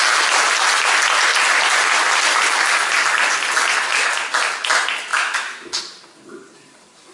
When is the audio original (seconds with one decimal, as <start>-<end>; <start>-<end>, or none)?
0.0-5.1; 5.8-7.1